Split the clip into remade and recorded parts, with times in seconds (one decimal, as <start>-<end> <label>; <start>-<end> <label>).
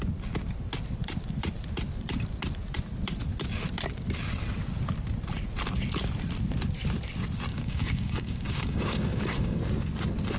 0.0-7.5 recorded; 7.5-9.6 remade; 9.6-10.4 recorded